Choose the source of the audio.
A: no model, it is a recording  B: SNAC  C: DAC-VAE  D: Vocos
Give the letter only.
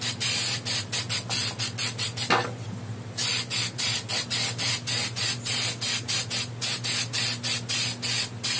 A